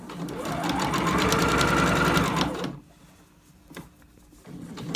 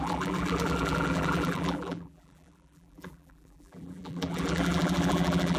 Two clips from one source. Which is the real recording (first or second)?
first